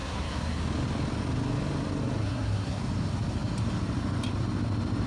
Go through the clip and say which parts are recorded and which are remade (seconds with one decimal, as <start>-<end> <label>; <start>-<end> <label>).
0.0-0.6 remade; 0.6-2.2 recorded; 2.2-2.8 remade; 2.8-5.1 recorded